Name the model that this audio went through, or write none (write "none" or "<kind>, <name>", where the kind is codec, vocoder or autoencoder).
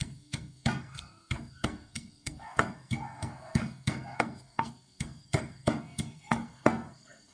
codec, SNAC